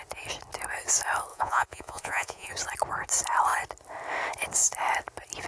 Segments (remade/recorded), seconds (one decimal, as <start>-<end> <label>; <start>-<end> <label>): 0.0-1.3 recorded; 1.3-2.5 remade; 2.5-5.5 recorded

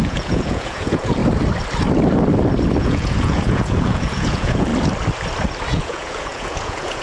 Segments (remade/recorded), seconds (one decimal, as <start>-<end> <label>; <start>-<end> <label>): 0.0-1.2 remade; 1.2-2.8 recorded; 2.8-4.7 remade; 4.7-5.7 recorded; 5.7-7.0 remade

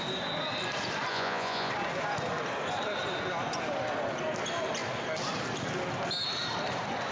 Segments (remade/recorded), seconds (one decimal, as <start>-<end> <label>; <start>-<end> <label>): 0.0-1.1 recorded; 1.1-1.7 remade; 1.7-7.1 recorded